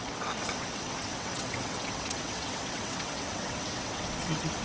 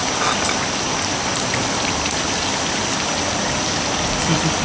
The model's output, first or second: first